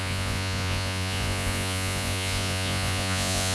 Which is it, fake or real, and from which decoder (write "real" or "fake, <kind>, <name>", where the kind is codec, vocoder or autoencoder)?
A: fake, vocoder, Vocos